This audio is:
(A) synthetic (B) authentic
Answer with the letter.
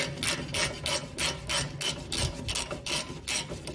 B